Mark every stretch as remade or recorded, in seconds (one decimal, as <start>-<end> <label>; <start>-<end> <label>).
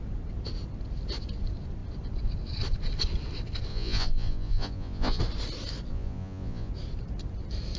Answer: 0.0-3.7 recorded; 3.7-5.2 remade; 5.2-5.9 recorded; 5.9-6.7 remade; 6.7-7.8 recorded